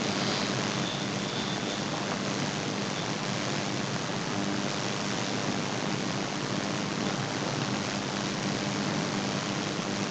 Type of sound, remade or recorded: recorded